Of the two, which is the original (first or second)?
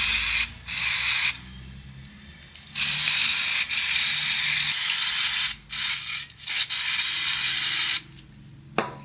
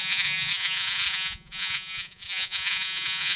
first